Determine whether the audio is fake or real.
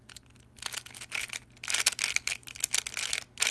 real